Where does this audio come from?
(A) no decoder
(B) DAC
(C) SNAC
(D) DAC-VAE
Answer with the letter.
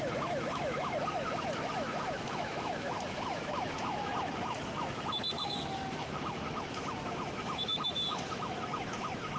D